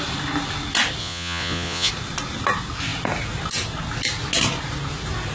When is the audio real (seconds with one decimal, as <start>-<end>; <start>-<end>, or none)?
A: 0.0-1.0; 1.9-5.3